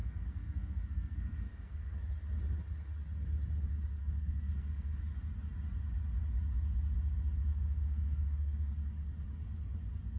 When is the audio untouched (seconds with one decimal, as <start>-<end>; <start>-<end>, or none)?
2.0-4.0; 5.0-7.5; 8.7-10.2